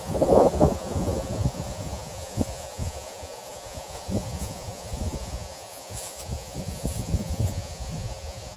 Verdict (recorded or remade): remade